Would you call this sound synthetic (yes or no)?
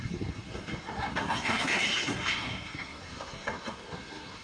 yes